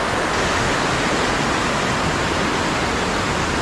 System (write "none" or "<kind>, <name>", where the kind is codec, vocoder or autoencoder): none